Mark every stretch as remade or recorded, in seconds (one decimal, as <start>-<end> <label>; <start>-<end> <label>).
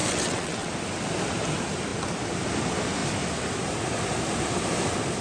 0.0-0.7 remade; 0.7-5.2 recorded